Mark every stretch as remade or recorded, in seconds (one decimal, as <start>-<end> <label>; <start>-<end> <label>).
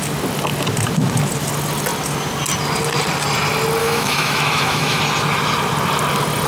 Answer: 0.0-3.8 recorded; 3.8-5.0 remade; 5.0-6.5 recorded